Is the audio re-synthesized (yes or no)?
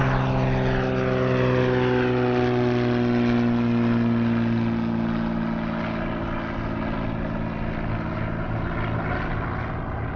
no